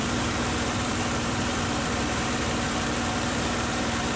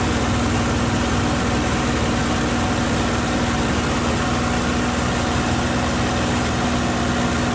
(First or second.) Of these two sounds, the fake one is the first